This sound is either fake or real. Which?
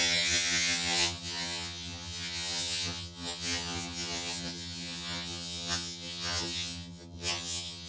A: fake